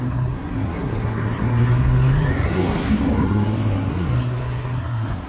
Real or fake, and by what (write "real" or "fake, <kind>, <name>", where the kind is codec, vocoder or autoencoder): fake, codec, SNAC